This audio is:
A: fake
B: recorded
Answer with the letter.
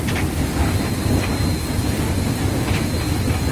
B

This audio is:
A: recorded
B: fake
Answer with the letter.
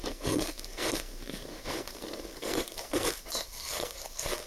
B